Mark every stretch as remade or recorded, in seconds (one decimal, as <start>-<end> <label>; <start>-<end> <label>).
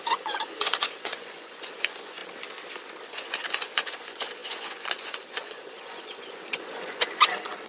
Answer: 0.0-2.2 remade; 2.2-3.1 recorded; 3.1-7.7 remade